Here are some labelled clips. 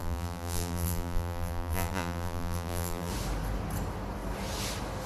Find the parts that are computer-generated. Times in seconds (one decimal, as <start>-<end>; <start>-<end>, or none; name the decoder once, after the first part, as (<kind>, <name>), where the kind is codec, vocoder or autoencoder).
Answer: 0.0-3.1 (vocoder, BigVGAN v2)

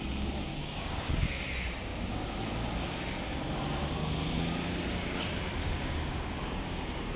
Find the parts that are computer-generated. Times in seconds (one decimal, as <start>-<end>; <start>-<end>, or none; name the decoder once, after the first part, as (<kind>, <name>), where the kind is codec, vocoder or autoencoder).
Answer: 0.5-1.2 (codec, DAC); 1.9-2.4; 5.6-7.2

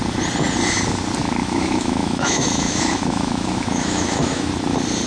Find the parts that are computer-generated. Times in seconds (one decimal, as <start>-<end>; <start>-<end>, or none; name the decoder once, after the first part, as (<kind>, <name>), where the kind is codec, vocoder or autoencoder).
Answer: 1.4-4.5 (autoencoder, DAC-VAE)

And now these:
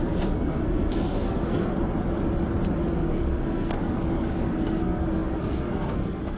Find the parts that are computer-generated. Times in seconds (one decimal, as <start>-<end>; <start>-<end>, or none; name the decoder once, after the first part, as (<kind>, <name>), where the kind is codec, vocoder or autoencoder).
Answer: 0.0-1.7 (codec, SNAC); 2.8-6.4